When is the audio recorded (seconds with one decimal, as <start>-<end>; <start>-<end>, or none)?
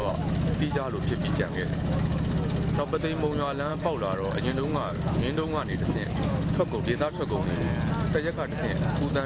0.6-1.2; 2.5-3.7; 6.8-9.3